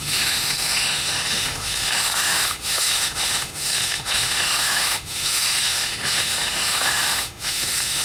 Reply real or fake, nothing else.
fake